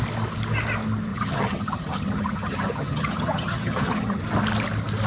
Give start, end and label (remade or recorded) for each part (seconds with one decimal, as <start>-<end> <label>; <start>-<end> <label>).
0.0-1.1 recorded; 1.1-4.2 remade; 4.2-5.1 recorded